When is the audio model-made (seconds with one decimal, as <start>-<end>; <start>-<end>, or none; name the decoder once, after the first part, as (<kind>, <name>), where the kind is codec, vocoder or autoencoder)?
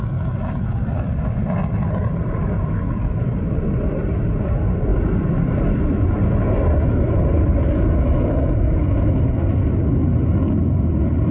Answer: none